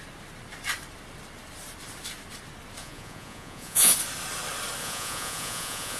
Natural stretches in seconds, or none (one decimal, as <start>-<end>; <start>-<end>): 0.0-2.8; 3.9-4.8